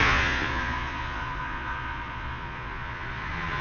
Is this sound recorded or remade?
remade